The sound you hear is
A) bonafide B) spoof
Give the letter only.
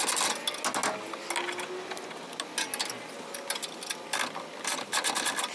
A